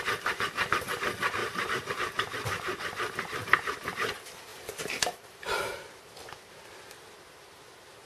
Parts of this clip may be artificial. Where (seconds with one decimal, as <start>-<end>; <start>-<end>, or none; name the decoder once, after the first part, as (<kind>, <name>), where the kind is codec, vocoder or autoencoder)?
1.4-1.9 (vocoder, BigVGAN v2)